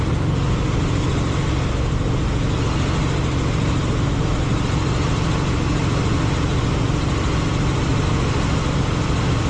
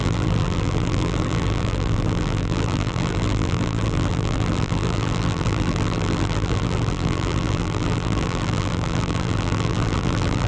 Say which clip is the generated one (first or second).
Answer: second